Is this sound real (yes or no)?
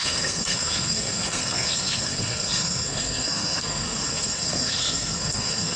no